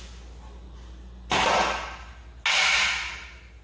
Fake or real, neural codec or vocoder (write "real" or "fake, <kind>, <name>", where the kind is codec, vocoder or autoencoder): real